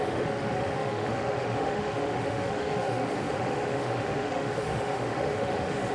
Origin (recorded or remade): remade